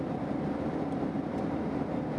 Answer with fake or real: real